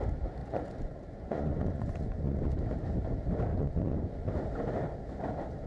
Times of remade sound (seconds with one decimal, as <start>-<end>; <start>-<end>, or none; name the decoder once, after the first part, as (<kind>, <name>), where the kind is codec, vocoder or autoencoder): 0.4-2.6 (vocoder, Vocos); 3.5-4.3